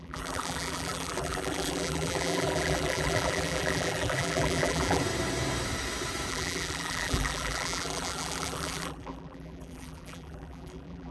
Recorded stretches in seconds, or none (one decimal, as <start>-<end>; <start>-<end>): 5.0-6.3